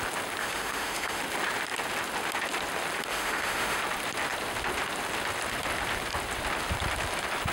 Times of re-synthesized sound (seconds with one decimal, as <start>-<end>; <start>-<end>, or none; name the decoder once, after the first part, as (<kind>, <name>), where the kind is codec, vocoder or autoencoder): 0.4-1.2 (autoencoder, DAC-VAE); 3.1-3.8